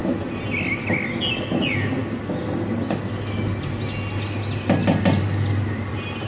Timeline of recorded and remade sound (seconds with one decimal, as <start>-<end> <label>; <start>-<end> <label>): 0.0-1.2 recorded; 1.2-2.0 remade; 2.0-5.2 recorded; 5.2-6.3 remade

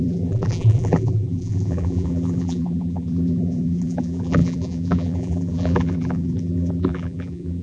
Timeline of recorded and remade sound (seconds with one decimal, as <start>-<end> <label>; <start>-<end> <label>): 0.0-7.6 remade

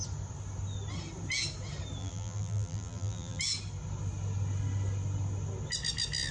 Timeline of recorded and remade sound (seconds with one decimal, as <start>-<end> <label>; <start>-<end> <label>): 0.0-2.0 recorded; 2.0-3.4 remade; 3.4-6.3 recorded

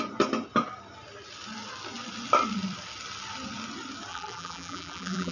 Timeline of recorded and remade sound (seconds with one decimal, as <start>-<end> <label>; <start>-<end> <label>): 0.0-4.1 recorded; 4.1-5.3 remade

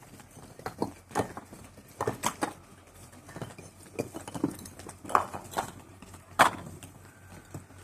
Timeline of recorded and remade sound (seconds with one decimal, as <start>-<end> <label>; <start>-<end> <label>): 0.0-5.9 recorded; 5.9-6.5 remade; 6.5-7.8 recorded